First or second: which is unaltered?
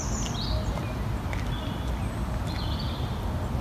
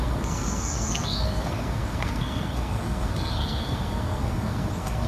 first